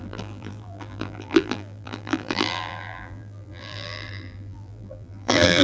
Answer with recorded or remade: remade